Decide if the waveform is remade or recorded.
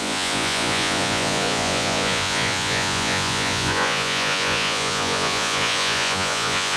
remade